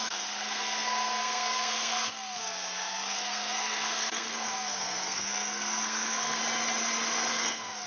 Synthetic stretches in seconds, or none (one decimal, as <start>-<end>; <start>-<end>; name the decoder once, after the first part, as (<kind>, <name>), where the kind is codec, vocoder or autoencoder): 0.0-6.4 (codec, SNAC); 7.3-7.9